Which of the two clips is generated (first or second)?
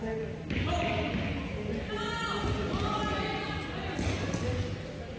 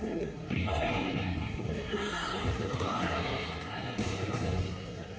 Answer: second